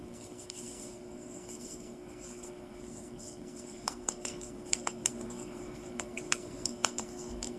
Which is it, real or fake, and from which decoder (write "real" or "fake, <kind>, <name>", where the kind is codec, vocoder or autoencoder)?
fake, codec, SNAC